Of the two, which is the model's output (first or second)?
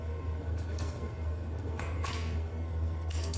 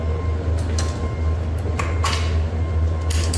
first